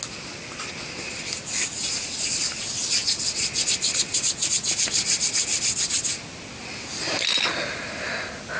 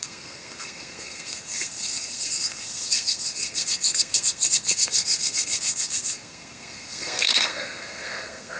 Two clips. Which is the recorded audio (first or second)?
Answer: first